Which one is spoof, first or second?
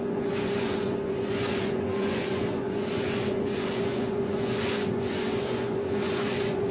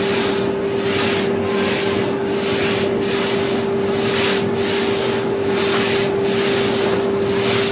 first